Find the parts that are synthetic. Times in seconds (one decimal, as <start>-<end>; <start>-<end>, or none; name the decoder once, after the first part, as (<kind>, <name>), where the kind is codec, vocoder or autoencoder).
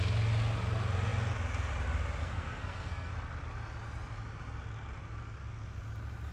2.2-3.1 (codec, SNAC)